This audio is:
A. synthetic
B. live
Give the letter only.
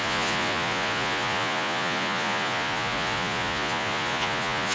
A